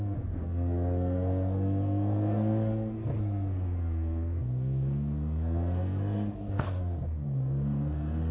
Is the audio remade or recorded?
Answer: remade